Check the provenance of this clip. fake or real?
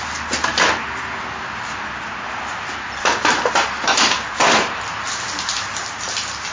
real